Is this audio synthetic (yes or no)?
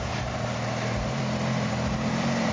yes